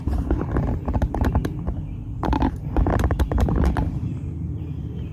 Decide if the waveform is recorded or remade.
recorded